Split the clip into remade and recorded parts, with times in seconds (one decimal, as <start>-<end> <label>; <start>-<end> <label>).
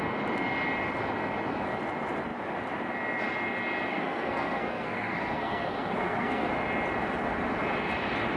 0.0-3.9 recorded; 3.9-6.5 remade; 6.5-8.4 recorded